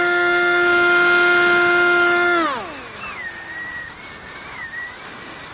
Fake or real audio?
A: real